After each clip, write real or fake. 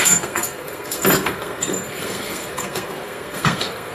fake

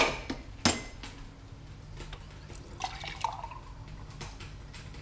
real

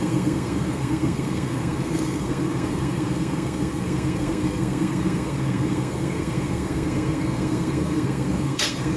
fake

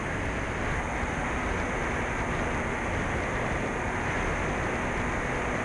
real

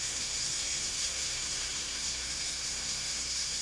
fake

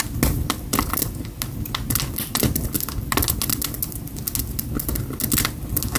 real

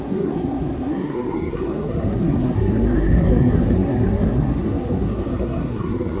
fake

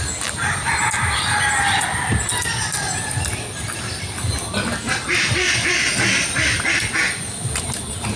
real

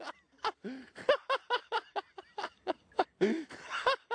real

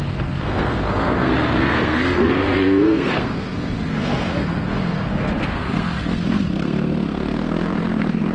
fake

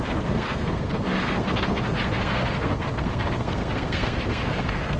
fake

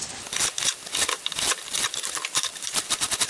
real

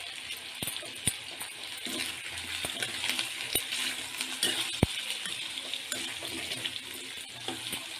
real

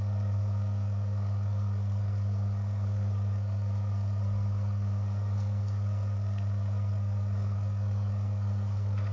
fake